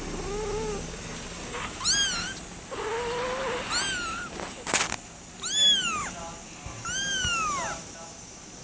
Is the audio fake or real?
real